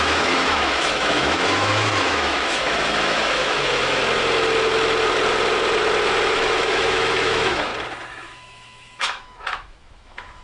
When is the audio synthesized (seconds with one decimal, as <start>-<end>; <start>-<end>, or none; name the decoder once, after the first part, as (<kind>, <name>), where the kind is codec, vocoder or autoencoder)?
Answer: 0.0-4.0 (autoencoder, DAC-VAE); 6.3-7.7; 8.2-10.4